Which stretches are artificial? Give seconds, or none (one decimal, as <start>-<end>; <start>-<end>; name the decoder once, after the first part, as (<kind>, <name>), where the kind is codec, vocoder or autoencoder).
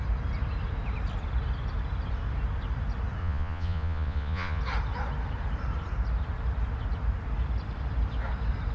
3.2-4.6 (vocoder, Vocos)